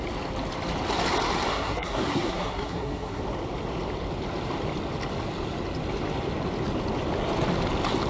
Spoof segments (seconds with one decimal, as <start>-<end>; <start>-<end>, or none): 1.5-3.2